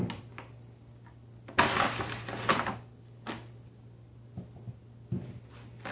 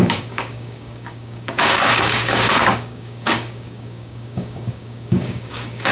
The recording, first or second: first